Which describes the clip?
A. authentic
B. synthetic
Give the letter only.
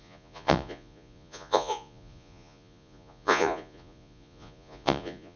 B